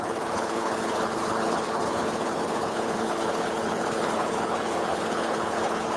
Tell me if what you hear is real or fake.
fake